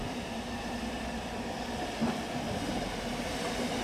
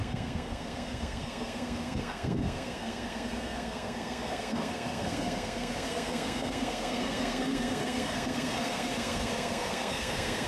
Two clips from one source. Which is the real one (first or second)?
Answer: first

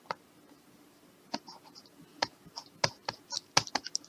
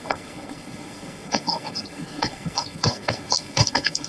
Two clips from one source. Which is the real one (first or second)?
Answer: first